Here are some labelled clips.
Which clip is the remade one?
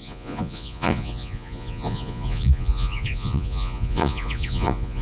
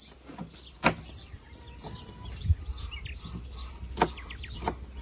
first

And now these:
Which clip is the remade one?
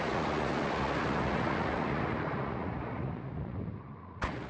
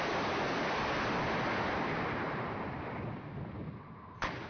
first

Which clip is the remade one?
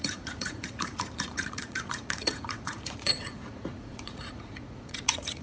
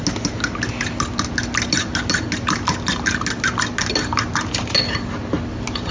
first